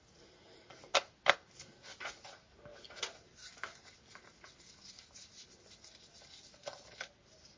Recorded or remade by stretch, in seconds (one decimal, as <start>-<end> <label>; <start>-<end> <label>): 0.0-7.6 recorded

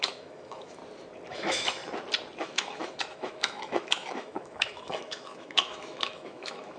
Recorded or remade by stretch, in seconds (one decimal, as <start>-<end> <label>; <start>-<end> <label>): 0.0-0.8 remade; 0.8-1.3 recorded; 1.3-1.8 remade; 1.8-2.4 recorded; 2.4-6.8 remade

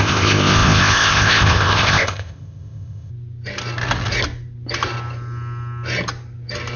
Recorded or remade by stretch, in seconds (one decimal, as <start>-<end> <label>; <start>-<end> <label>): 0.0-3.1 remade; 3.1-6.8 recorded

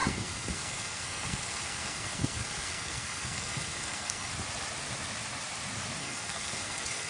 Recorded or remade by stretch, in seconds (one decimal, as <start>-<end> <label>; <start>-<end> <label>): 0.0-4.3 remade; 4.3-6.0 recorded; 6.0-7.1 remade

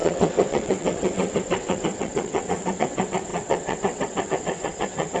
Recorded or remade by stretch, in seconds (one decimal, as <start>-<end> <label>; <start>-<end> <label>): 0.0-5.2 remade